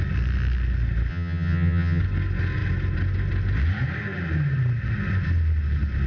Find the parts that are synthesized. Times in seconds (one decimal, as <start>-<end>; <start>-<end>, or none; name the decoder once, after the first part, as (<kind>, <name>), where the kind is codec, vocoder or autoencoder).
1.1-2.0 (vocoder, HiFi-GAN)